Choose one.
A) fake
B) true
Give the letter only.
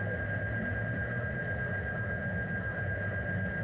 B